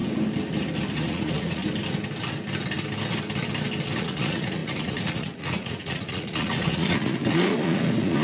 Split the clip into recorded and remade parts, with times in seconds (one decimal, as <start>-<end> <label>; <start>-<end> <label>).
0.0-1.0 recorded; 1.0-1.6 remade; 1.6-4.0 recorded; 4.0-8.2 remade